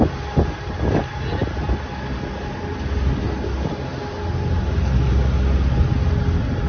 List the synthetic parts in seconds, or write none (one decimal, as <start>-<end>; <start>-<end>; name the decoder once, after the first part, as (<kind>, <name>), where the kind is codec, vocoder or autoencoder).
none